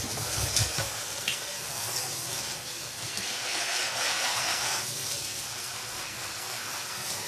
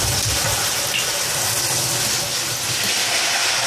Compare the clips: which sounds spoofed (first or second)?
first